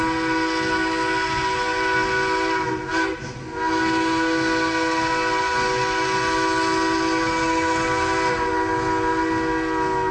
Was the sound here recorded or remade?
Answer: recorded